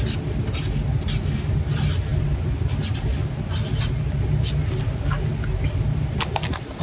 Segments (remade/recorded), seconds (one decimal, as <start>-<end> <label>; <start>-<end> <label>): 0.0-6.8 recorded